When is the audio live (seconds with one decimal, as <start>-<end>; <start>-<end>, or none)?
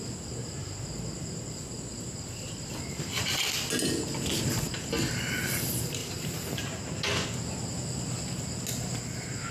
0.0-6.0; 6.8-9.5